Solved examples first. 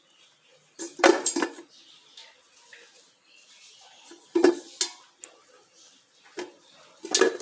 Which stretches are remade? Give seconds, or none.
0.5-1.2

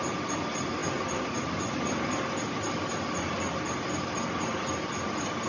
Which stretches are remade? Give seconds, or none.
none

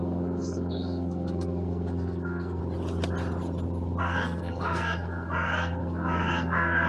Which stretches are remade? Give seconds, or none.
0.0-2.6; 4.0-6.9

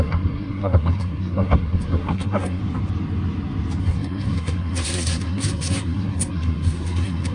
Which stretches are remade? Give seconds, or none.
0.0-2.6; 3.8-7.3